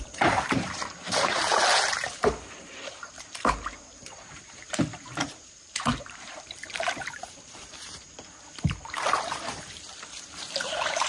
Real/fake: fake